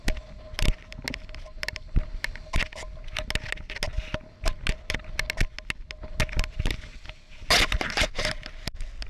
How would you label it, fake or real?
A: real